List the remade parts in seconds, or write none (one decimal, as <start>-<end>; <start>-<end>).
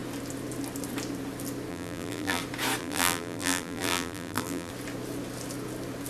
1.7-2.4; 2.8-4.7